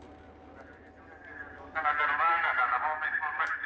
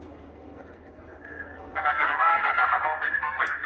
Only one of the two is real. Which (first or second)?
first